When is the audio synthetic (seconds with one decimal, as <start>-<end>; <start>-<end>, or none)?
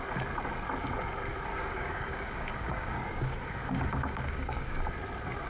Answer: 1.5-4.8